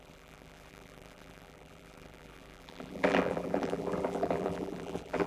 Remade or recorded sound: remade